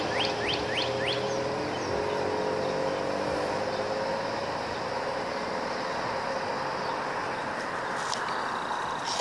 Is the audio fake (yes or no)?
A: no